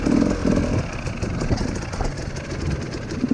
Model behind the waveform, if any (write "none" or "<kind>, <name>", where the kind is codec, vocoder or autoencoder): none